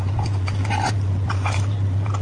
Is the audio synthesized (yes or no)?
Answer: no